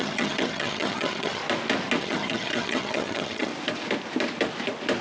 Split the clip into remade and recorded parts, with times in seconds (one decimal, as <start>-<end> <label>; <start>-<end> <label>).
0.0-1.4 remade; 1.4-2.0 recorded; 2.0-3.5 remade; 3.5-5.0 recorded